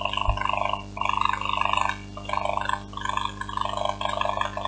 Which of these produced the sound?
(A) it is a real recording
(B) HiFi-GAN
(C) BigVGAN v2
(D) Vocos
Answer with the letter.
A